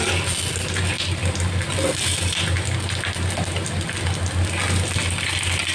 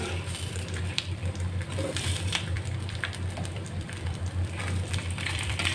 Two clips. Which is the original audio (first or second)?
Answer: first